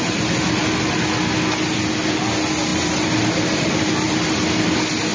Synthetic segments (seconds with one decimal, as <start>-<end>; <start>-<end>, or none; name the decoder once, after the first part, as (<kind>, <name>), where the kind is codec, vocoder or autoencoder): 2.7-3.7 (vocoder, BigVGAN v2)